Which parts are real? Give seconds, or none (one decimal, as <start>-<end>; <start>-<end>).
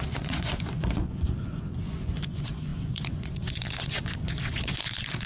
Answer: none